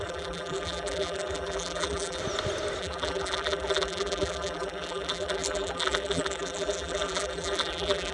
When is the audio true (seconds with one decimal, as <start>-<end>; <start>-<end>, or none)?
2.2-2.8